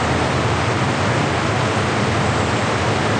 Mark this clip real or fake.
real